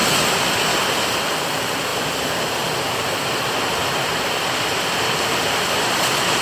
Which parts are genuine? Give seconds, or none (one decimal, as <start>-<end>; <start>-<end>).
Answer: 1.4-6.4